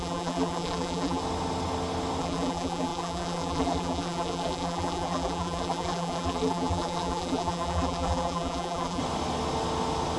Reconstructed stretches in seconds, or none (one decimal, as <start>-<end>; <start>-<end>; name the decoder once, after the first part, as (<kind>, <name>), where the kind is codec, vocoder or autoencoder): 0.0-1.2 (vocoder, BigVGAN v2); 2.2-9.0